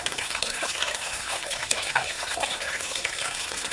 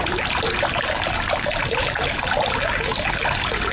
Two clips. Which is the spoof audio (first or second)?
first